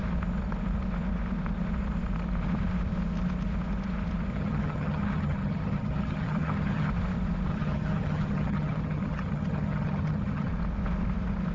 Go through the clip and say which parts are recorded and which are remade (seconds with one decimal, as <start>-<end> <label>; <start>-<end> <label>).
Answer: 0.0-4.3 recorded; 4.3-6.9 remade; 6.9-7.5 recorded; 7.5-10.5 remade; 10.5-11.5 recorded